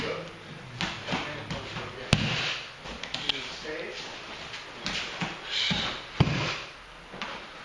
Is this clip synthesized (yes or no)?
no